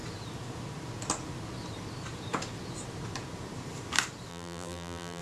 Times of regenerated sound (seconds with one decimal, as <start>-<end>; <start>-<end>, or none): 4.3-5.2